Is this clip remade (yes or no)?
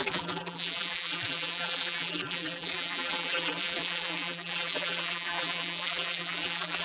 yes